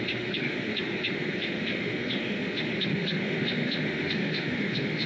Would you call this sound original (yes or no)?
no